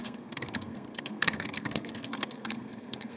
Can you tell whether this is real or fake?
fake